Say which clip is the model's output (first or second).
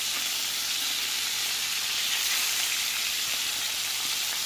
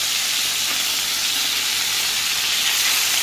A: first